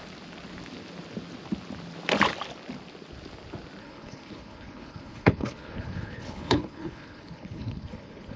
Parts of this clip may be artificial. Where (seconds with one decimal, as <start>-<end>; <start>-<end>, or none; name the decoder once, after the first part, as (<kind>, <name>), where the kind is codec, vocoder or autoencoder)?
3.8-8.4 (codec, HILCodec)